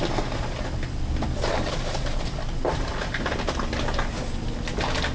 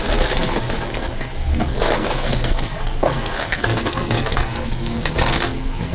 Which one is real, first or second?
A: first